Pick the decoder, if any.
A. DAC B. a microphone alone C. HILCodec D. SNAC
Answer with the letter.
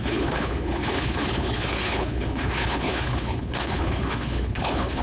C